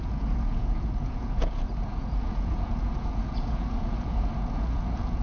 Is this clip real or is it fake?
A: fake